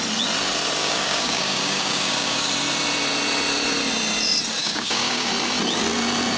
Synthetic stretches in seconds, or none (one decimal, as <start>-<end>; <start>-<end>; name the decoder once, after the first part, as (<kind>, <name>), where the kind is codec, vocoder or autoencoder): 0.8-2.5 (codec, DAC); 4.6-5.3